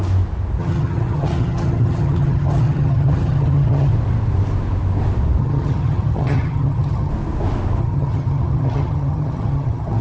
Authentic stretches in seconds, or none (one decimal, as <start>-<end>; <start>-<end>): 0.0-0.6; 3.9-5.4; 7.1-7.8